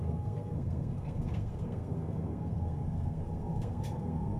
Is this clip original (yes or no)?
no